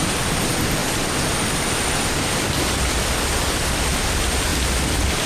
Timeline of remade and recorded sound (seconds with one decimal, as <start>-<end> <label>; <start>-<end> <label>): 0.0-5.3 recorded